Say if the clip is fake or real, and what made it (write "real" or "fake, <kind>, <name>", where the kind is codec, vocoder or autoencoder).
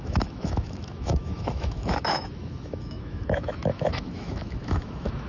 fake, autoencoder, DAC-VAE